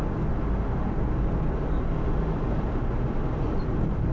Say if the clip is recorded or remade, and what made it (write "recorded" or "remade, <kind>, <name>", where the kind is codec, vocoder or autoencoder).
recorded